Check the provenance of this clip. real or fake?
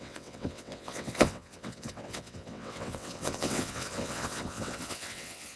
fake